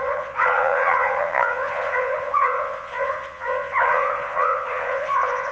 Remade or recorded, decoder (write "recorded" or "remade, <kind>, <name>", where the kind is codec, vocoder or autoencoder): remade, vocoder, Vocos